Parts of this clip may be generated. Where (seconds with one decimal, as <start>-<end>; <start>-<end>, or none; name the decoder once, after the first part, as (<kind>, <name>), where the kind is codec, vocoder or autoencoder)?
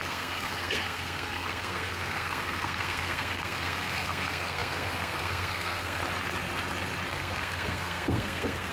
0.0-6.0 (codec, SNAC); 7.1-8.7